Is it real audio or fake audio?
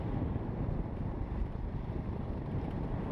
real